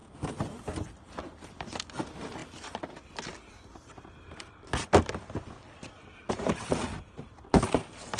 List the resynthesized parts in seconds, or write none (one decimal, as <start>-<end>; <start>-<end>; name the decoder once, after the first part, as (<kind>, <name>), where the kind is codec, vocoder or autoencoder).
none